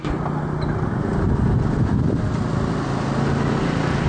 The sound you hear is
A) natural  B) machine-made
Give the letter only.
A